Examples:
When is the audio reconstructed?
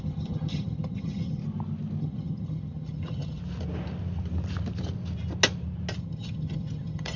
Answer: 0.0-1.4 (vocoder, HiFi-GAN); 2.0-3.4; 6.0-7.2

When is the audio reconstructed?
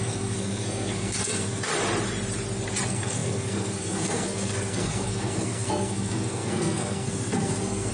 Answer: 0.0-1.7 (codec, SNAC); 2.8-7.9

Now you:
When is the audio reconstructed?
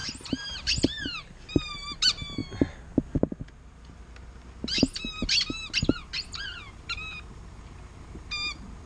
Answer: 0.0-1.6 (vocoder, BigVGAN v2)